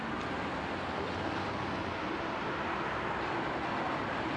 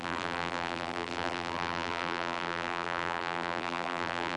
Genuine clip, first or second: first